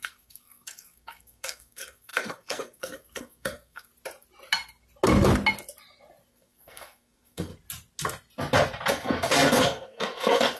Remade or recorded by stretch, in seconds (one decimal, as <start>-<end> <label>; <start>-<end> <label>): 0.0-3.9 remade; 3.9-6.3 recorded; 6.3-7.5 remade; 7.5-8.9 recorded; 8.9-10.6 remade